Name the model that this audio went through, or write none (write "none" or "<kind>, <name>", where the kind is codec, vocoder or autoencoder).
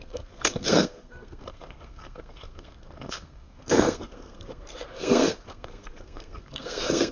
codec, SNAC